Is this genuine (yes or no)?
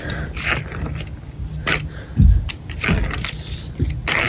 yes